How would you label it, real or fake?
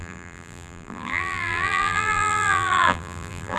fake